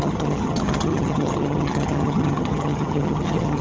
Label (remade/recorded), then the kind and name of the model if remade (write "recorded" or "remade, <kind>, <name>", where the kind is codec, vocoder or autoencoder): remade, vocoder, HiFi-GAN